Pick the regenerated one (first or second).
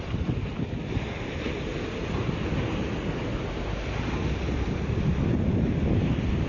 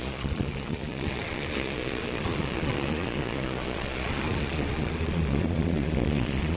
second